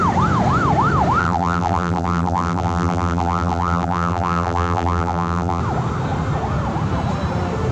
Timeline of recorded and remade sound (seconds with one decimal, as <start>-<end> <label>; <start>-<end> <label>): 0.0-1.2 recorded; 1.2-5.6 remade; 5.6-7.7 recorded